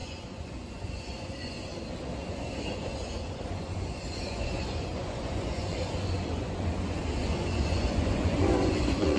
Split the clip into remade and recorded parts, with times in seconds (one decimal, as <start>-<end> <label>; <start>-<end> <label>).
0.0-1.7 remade; 1.7-2.3 recorded; 2.3-9.2 remade